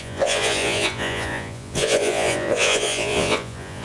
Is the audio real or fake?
fake